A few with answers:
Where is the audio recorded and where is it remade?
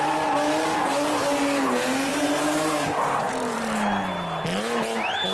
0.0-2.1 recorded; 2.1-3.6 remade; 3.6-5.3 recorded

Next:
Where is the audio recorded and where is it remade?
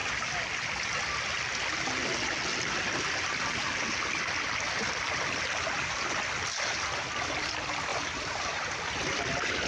0.0-7.9 recorded; 7.9-8.8 remade; 8.8-9.7 recorded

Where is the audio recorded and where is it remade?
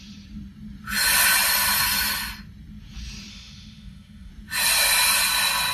0.0-3.3 recorded; 3.3-4.3 remade; 4.3-5.7 recorded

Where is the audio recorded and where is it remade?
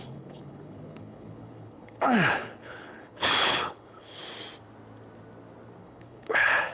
0.0-4.2 remade; 4.2-5.8 recorded; 5.8-6.7 remade